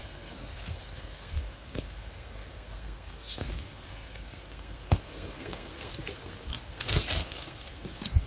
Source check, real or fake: fake